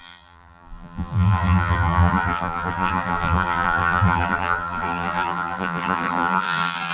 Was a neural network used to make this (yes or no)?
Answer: yes